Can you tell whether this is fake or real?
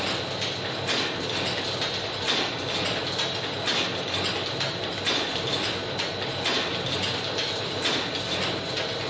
real